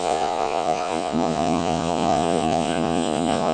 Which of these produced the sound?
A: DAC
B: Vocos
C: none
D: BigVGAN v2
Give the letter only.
B